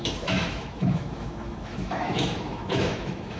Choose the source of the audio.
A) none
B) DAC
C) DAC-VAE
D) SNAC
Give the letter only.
C